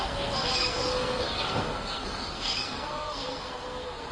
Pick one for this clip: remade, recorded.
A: remade